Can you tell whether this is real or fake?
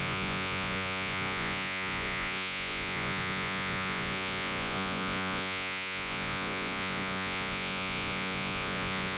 fake